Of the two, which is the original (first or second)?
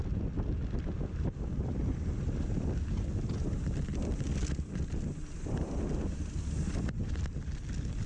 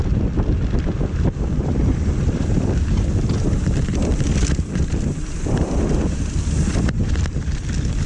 first